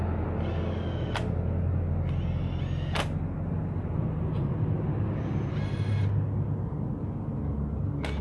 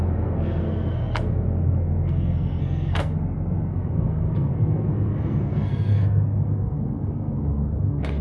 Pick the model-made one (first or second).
second